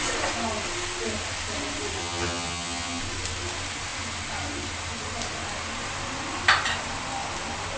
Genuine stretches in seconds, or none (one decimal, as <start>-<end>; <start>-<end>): 0.0-2.0; 3.0-7.8